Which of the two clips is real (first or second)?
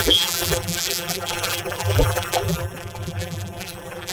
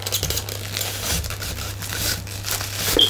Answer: second